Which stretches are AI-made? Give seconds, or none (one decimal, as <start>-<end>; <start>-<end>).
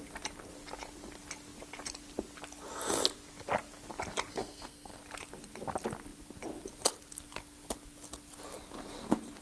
4.3-5.0